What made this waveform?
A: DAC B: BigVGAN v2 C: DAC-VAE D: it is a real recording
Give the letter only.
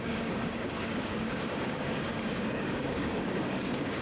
A